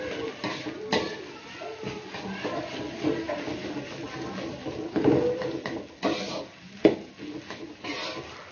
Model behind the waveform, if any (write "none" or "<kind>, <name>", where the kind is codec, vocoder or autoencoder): none